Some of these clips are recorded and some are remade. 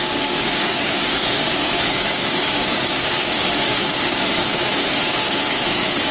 remade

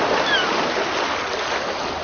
recorded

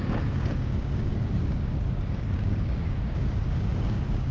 remade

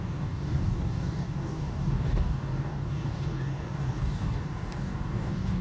remade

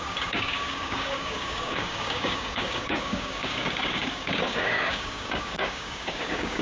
remade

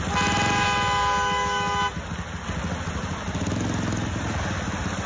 recorded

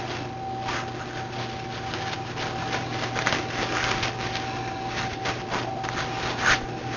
recorded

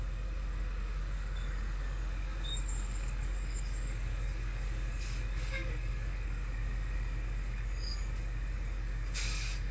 remade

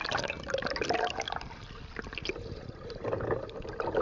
recorded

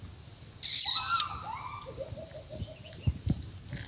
recorded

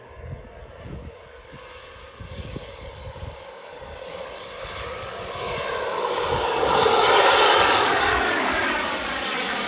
remade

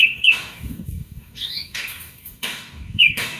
remade